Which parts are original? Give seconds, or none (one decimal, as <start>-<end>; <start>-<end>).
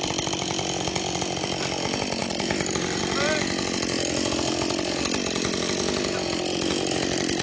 0.0-2.2; 3.0-7.4